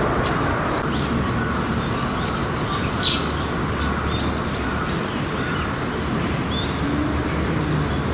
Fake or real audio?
real